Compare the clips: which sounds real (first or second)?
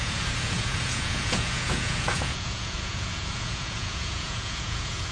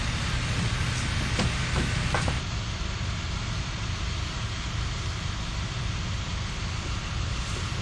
second